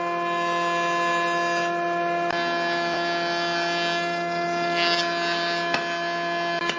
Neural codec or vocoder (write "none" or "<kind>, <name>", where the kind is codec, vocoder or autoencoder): none